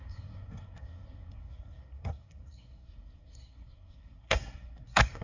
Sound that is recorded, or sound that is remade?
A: remade